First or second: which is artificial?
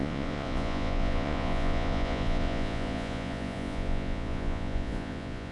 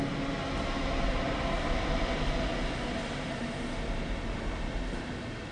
first